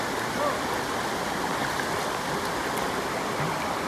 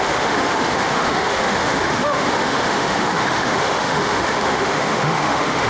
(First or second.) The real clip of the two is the first